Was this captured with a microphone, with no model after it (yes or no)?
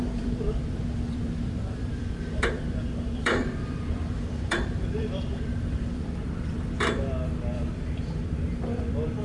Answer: no